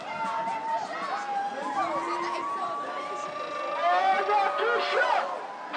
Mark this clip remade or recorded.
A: recorded